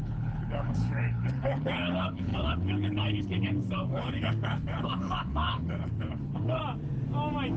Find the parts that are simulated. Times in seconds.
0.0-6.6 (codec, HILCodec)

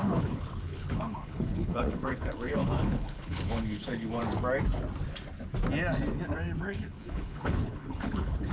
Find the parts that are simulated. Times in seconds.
0.0-4.2 (codec, HILCodec); 6.6-8.5

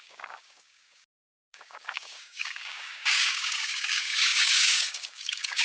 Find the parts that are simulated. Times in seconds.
0.0-5.6 (codec, DAC)

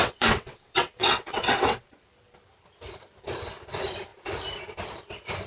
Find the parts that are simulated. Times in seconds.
0.0-1.9 (vocoder, WaveNeXt)

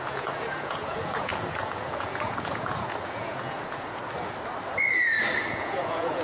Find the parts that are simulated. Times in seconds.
0.0-4.0 (vocoder, Vocos); 5.5-6.2

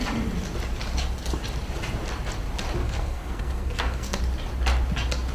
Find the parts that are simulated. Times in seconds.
2.8-4.2 (codec, SNAC)

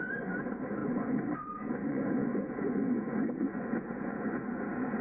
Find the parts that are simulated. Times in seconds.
0.0-5.0 (vocoder, Vocos)